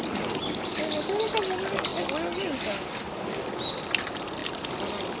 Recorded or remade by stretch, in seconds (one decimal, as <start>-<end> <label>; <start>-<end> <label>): 0.0-5.2 recorded